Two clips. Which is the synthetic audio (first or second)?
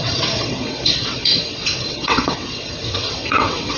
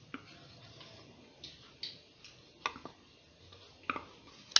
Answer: first